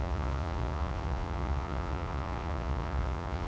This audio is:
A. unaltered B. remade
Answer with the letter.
B